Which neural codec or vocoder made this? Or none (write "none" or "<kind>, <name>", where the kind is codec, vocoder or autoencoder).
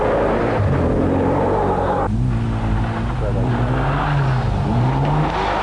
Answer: none